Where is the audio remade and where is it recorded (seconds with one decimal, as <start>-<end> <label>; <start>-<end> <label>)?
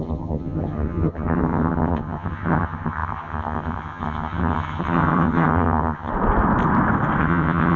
0.0-6.1 remade; 6.1-7.2 recorded; 7.2-7.8 remade